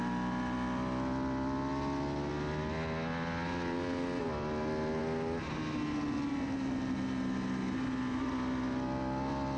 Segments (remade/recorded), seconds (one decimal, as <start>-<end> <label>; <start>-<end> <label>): 0.0-9.6 recorded